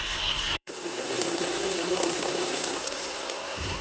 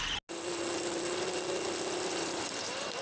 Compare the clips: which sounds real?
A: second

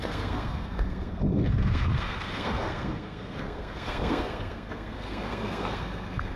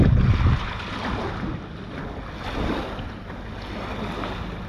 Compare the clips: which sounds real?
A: second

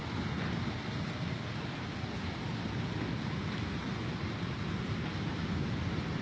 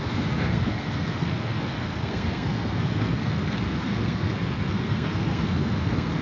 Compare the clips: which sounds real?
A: first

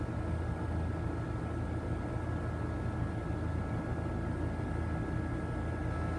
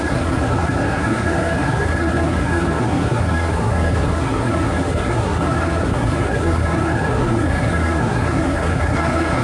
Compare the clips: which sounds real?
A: first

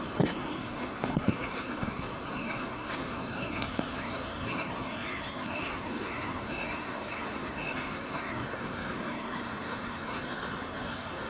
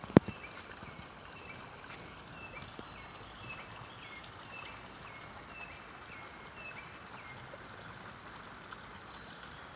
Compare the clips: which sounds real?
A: second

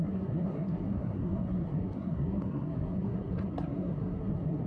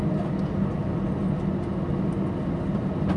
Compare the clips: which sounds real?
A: second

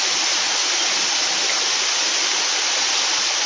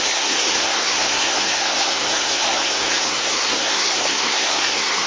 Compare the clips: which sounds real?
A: first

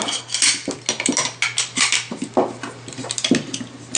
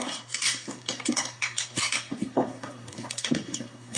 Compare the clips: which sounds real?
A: first